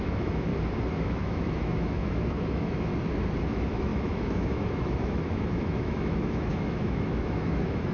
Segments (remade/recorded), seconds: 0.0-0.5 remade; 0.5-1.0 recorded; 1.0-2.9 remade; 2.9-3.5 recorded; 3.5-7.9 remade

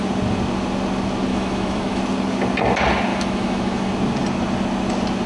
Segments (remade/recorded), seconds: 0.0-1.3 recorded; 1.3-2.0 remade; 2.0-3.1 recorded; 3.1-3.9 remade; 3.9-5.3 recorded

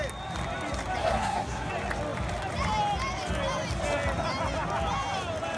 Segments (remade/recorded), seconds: 0.0-1.0 recorded; 1.0-1.7 remade; 1.7-5.6 recorded